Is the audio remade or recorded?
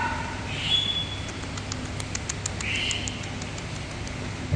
recorded